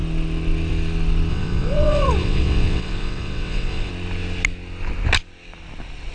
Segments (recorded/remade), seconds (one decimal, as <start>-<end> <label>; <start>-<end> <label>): 0.0-1.3 recorded; 1.3-3.9 remade; 3.9-6.1 recorded